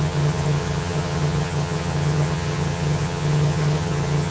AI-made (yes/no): yes